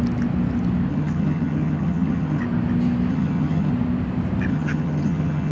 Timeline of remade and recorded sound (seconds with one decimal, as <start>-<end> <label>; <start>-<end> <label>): 0.0-0.9 recorded; 0.9-2.4 remade; 2.4-3.1 recorded; 3.1-3.7 remade; 3.7-4.5 recorded; 4.5-5.5 remade